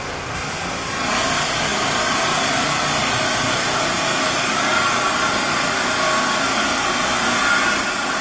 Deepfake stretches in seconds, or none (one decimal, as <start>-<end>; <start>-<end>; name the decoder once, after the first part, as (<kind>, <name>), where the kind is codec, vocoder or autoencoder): none